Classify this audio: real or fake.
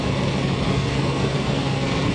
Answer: fake